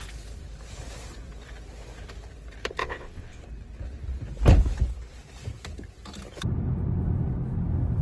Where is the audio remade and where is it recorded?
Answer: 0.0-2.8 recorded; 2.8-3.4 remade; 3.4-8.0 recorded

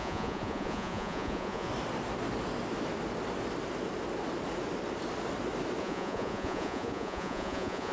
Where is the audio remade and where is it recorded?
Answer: 0.0-1.7 remade; 1.7-5.8 recorded; 5.8-7.9 remade

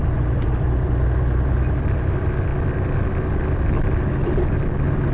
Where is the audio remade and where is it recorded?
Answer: 0.0-0.9 remade; 0.9-5.1 recorded

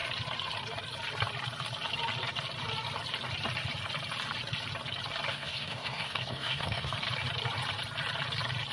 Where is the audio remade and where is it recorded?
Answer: 0.0-5.3 recorded; 5.3-6.9 remade; 6.9-8.7 recorded

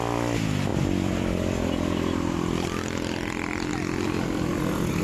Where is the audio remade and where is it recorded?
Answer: 0.0-0.7 recorded; 0.7-3.7 remade; 3.7-5.0 recorded

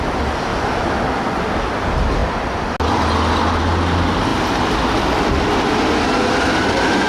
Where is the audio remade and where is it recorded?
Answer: 0.0-0.5 recorded; 0.5-1.0 remade; 1.0-7.1 recorded